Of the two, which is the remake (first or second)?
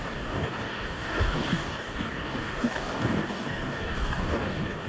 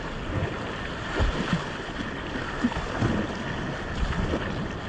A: first